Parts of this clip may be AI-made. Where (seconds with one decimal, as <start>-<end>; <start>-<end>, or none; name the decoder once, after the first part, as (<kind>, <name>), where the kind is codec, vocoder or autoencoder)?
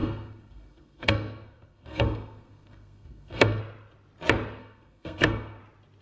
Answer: 0.0-3.6 (codec, SNAC); 4.6-5.6